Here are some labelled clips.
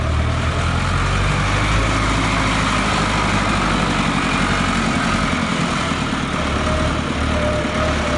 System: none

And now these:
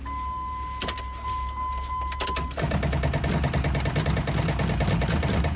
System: none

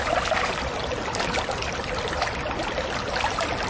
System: none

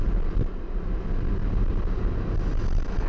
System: none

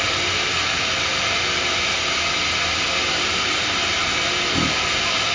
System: none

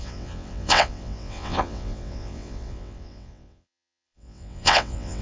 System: vocoder, WaveNeXt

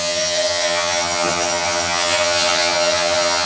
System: vocoder, HiFi-GAN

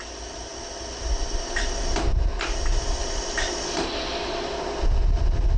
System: none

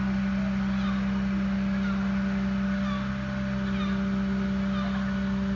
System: none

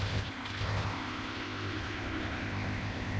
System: codec, ZipCodec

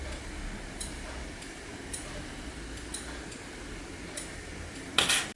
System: none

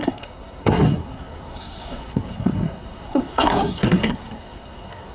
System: codec, SNAC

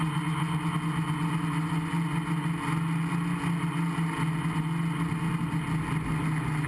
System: none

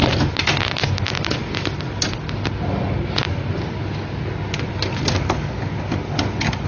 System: none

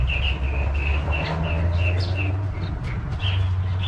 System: none